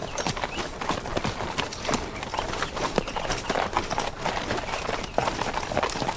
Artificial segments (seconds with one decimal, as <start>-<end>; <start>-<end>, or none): 0.0-0.6; 1.1-3.3